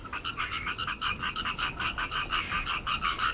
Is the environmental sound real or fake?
fake